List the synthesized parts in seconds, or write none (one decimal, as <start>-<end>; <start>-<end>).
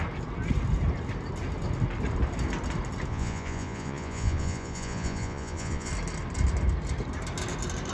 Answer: 3.1-5.9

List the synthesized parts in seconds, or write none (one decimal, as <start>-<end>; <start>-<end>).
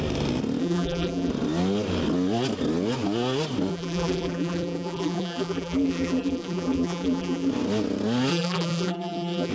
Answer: 0.6-1.3; 3.7-7.5; 8.3-9.5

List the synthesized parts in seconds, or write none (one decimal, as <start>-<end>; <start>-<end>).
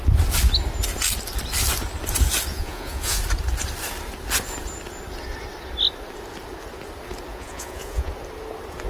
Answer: 2.5-3.2; 7.3-8.1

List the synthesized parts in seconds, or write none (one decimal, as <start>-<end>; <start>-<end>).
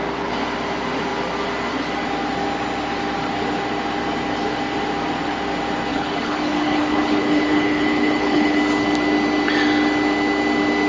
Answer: 5.9-8.6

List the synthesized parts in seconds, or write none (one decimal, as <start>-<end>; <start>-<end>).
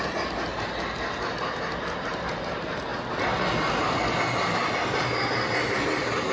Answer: none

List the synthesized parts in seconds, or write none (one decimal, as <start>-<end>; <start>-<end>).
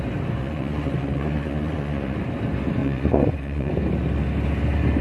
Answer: 0.4-2.2; 2.8-3.7